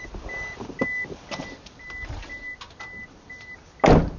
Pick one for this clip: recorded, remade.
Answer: recorded